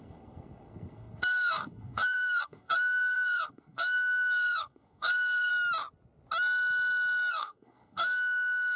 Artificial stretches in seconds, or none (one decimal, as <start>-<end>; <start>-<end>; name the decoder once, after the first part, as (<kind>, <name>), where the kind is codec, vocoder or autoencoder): 0.0-5.5 (codec, SNAC); 7.3-8.8